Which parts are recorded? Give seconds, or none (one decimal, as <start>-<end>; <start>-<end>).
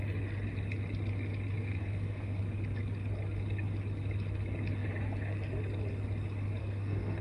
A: 0.0-1.6; 2.4-6.6